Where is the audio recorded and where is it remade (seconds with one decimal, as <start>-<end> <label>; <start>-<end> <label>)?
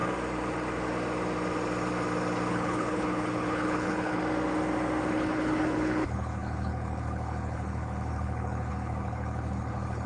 0.0-2.5 recorded; 2.5-4.2 remade; 4.2-5.1 recorded; 5.1-10.1 remade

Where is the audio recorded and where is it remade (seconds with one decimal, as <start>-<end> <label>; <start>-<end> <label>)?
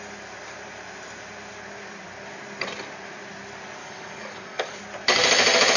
0.0-3.8 recorded; 3.8-4.8 remade; 4.8-5.8 recorded